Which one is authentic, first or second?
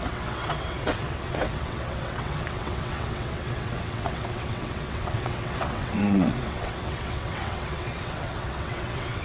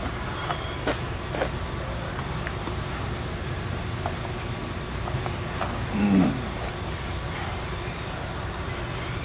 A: second